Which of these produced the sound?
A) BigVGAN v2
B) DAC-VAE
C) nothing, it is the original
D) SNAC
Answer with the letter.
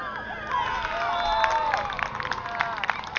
C